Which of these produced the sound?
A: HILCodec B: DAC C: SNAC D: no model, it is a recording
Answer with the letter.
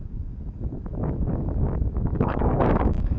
B